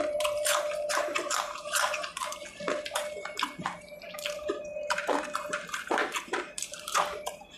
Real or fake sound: fake